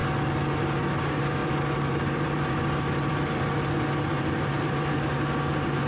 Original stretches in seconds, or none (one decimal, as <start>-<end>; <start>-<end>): 0.0-1.4; 4.9-5.9